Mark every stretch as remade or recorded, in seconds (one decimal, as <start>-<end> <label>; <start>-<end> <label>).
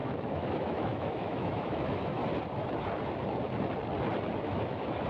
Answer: 0.0-2.2 remade; 2.2-4.4 recorded; 4.4-5.1 remade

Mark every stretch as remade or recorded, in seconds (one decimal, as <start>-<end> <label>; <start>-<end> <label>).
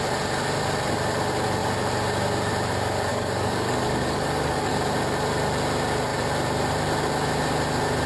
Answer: 0.0-3.1 recorded; 3.1-4.7 remade; 4.7-8.1 recorded